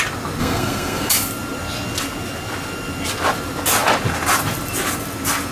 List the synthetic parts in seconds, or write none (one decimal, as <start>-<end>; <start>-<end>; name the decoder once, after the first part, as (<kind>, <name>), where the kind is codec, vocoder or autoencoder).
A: 0.4-1.1 (codec, SNAC)